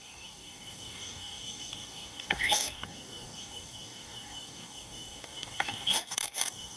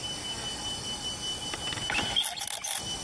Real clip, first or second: second